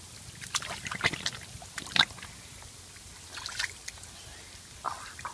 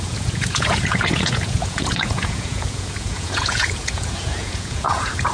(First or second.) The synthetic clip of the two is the second